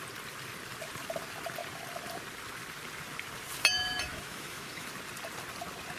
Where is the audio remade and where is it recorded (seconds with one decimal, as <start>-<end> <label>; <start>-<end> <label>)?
0.0-4.1 recorded; 4.1-4.9 remade; 4.9-6.0 recorded